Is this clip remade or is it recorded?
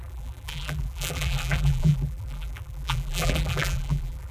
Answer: remade